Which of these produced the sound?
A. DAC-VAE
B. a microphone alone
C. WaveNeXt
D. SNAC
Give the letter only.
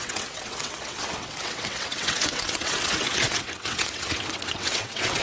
C